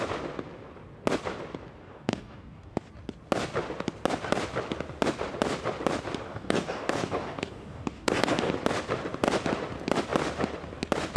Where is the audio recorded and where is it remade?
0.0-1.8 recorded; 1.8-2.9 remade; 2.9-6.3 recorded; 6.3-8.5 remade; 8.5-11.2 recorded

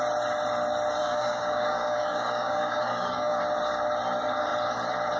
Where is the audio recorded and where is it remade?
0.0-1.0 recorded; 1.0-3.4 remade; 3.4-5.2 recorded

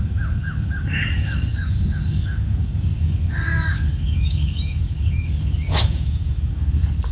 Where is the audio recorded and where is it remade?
0.0-7.1 remade

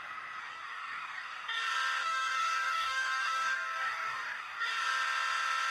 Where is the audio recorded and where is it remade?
0.0-0.4 recorded; 0.4-1.6 remade; 1.6-2.0 recorded; 2.0-4.7 remade; 4.7-5.7 recorded

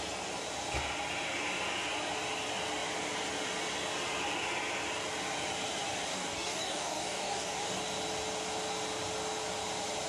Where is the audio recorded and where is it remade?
0.0-6.1 recorded; 6.1-7.8 remade; 7.8-10.1 recorded

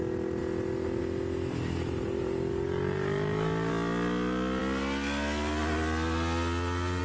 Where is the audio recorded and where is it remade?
0.0-2.5 recorded; 2.5-3.7 remade; 3.7-7.0 recorded

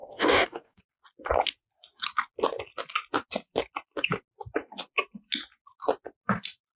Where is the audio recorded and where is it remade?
0.0-0.8 remade; 0.8-6.8 recorded

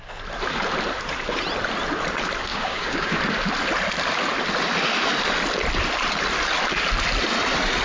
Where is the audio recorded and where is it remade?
0.0-2.5 recorded; 2.5-3.2 remade; 3.2-7.8 recorded